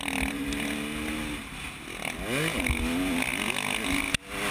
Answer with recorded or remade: recorded